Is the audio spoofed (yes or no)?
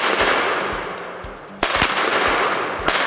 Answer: no